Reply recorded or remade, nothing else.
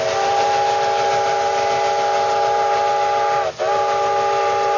recorded